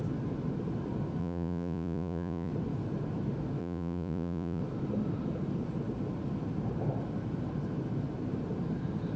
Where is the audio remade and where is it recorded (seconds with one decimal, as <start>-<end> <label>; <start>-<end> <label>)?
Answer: 0.0-1.2 recorded; 1.2-2.5 remade; 2.5-3.6 recorded; 3.6-4.6 remade; 4.6-9.2 recorded